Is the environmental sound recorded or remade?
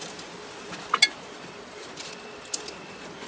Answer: recorded